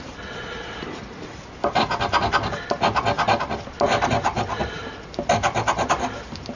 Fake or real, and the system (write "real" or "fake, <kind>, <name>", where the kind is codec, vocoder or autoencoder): real